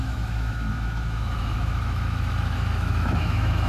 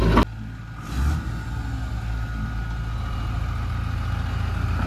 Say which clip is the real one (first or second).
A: second